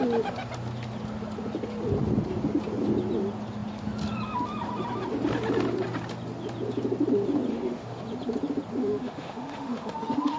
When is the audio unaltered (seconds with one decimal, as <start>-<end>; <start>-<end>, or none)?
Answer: 0.0-7.5; 8.0-8.8